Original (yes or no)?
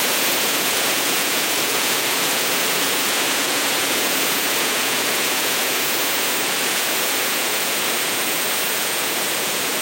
no